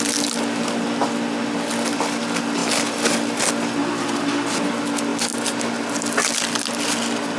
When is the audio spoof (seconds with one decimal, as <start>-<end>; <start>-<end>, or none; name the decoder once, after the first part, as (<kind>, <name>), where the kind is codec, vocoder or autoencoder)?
none